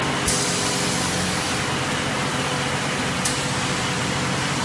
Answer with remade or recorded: recorded